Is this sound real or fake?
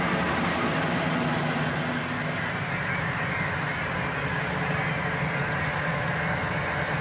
real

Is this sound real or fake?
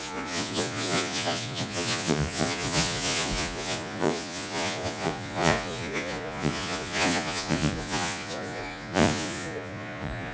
fake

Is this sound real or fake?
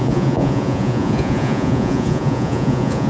fake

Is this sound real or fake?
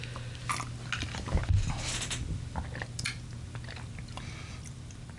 real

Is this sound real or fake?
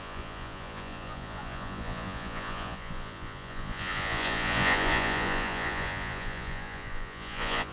fake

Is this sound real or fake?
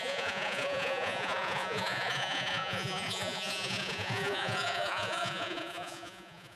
fake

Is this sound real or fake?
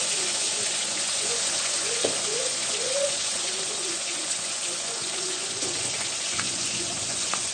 fake